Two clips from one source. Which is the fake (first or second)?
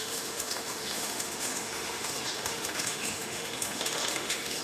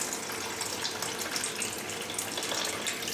first